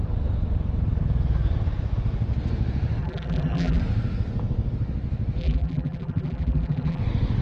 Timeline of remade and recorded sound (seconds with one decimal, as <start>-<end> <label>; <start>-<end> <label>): 0.0-3.0 recorded; 3.0-3.8 remade; 3.8-5.4 recorded; 5.4-7.0 remade; 7.0-7.4 recorded